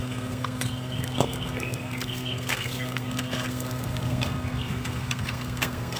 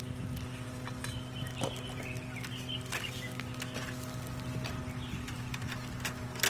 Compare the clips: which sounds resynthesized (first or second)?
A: first